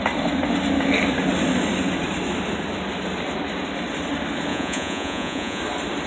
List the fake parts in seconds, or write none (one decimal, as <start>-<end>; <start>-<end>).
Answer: 4.5-5.6